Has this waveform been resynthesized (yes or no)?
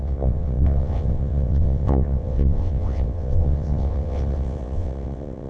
yes